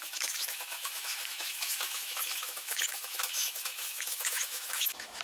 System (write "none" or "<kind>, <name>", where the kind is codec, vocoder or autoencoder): autoencoder, DAC-VAE